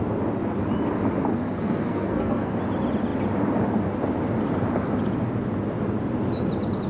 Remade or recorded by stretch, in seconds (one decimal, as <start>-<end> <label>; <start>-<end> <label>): 0.0-1.3 recorded; 1.3-2.6 remade; 2.6-6.9 recorded